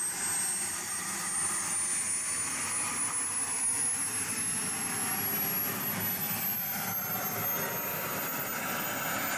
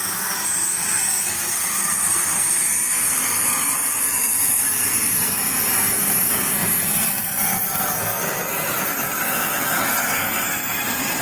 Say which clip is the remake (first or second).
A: second